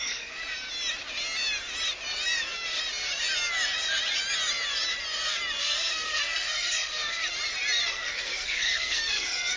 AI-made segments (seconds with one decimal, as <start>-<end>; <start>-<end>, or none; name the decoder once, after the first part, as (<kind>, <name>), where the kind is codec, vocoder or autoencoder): 0.0-0.4 (codec, SNAC); 5.6-7.2; 7.8-9.6